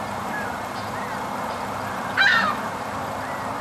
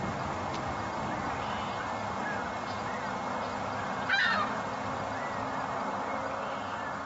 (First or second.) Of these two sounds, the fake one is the first